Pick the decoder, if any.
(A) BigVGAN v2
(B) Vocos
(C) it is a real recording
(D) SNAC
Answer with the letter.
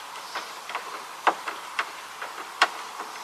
A